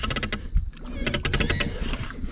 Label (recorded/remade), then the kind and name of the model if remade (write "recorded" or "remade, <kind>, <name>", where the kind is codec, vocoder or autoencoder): recorded